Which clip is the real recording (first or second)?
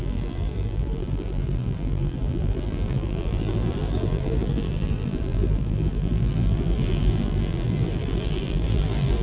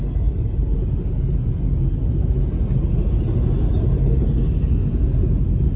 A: second